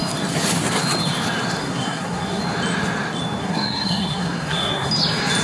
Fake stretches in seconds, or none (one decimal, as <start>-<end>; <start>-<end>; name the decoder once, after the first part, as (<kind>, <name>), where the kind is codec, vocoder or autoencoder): 1.6-2.4 (codec, SNAC); 3.4-4.9